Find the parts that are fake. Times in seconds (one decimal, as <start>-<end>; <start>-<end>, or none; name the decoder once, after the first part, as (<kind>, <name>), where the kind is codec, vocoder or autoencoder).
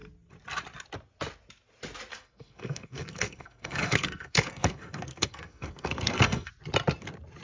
2.1-6.5 (codec, SNAC)